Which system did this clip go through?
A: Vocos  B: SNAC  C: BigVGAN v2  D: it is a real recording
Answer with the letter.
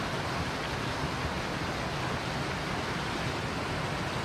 D